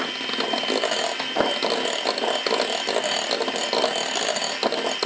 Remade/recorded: recorded